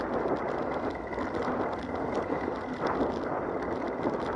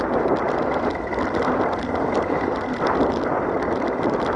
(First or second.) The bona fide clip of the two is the first